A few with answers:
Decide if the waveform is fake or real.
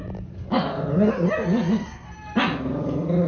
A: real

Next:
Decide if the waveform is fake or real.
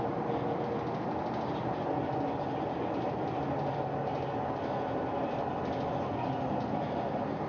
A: real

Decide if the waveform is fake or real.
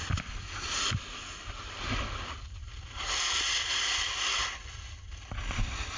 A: real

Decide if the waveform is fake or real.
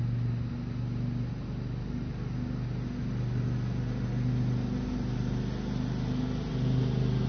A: real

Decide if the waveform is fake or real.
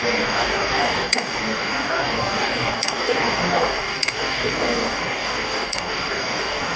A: fake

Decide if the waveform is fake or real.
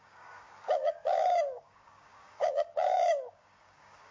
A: fake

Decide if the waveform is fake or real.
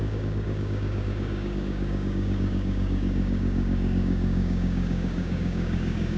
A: fake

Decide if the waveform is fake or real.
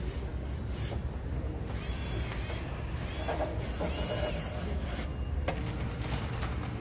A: real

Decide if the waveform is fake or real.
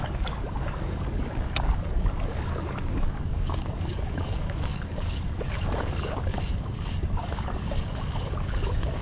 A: fake